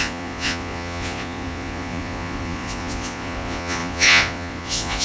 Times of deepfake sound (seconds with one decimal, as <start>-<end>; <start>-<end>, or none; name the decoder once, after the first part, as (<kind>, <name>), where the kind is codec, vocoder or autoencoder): 0.0-5.0 (vocoder, Vocos)